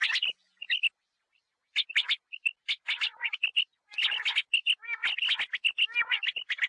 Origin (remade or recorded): recorded